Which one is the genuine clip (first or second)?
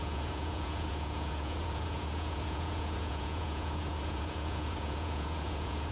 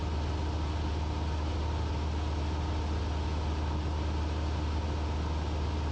second